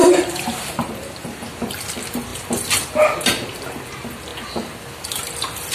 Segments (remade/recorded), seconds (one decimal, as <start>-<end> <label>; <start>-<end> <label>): 0.0-1.4 remade; 1.4-5.7 recorded